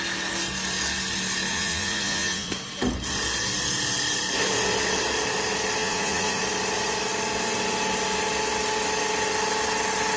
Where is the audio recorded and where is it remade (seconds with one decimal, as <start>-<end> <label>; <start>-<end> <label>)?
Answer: 0.0-1.5 recorded; 1.5-2.5 remade; 2.5-5.8 recorded; 5.8-6.4 remade; 6.4-10.2 recorded